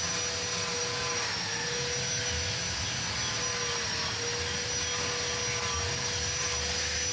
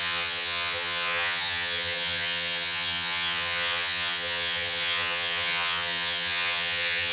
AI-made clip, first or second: second